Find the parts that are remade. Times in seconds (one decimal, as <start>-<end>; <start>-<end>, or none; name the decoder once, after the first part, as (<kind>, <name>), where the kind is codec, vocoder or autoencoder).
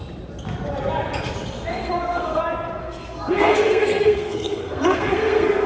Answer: 1.7-2.4 (codec, SNAC); 2.8-5.7